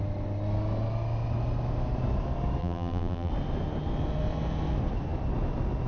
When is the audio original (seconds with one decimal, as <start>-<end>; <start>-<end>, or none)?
0.0-2.6; 3.3-5.9